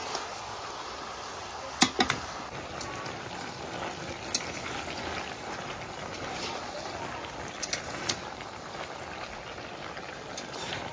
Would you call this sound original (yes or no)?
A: yes